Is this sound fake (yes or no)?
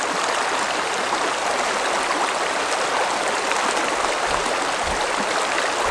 no